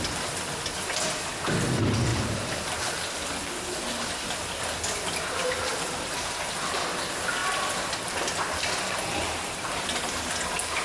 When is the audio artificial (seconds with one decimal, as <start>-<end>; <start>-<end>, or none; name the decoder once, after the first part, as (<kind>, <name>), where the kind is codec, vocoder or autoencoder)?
2.1-2.8 (vocoder, BigVGAN v2)